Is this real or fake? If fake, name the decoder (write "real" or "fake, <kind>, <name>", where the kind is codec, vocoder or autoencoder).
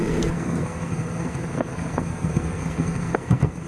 fake, codec, SNAC